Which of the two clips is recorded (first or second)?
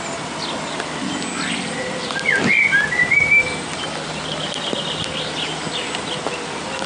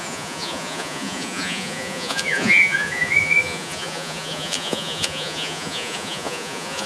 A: first